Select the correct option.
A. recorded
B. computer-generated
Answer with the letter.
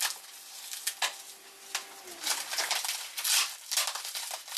A